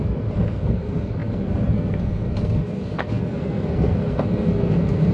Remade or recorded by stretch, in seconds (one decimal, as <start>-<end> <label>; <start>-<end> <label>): 0.0-5.1 remade